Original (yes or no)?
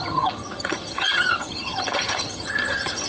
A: no